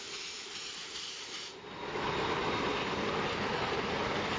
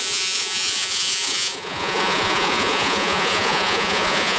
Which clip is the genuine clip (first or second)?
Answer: first